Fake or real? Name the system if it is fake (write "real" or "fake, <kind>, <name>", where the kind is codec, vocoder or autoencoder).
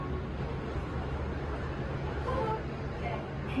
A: real